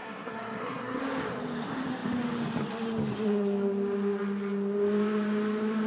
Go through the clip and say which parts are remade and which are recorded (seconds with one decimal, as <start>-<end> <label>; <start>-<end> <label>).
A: 0.0-1.0 remade; 1.0-5.9 recorded

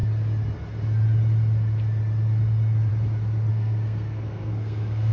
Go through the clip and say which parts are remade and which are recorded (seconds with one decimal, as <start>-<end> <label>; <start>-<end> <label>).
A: 0.0-3.5 recorded; 3.5-5.1 remade

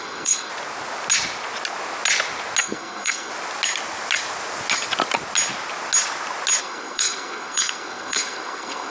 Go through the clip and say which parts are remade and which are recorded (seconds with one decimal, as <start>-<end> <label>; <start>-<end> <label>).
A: 0.0-0.5 remade; 0.5-2.6 recorded; 2.6-3.3 remade; 3.3-6.6 recorded; 6.6-8.9 remade

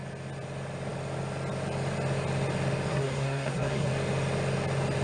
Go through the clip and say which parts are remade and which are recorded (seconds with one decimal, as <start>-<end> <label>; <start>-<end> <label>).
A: 0.0-2.9 recorded; 2.9-3.9 remade; 3.9-5.0 recorded

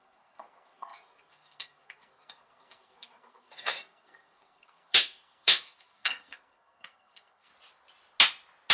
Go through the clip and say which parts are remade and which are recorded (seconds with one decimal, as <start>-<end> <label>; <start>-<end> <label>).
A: 0.0-7.5 remade; 7.5-8.7 recorded

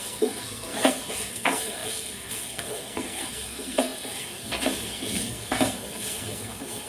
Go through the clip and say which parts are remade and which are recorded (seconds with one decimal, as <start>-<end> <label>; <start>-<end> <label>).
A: 0.0-6.9 remade

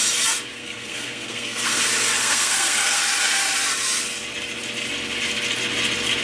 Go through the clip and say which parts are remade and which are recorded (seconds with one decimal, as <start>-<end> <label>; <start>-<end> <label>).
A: 0.0-0.5 recorded; 0.5-1.8 remade; 1.8-2.2 recorded; 2.2-3.0 remade; 3.0-6.2 recorded

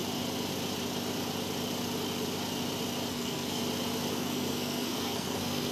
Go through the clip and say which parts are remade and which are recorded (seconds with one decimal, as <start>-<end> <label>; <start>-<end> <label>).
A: 0.0-3.1 recorded; 3.1-3.6 remade; 3.6-4.1 recorded; 4.1-5.7 remade